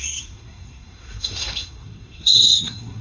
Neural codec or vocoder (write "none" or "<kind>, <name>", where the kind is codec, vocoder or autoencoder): codec, SNAC